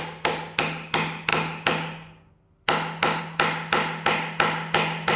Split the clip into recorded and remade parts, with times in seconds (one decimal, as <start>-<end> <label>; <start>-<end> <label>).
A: 0.0-5.2 recorded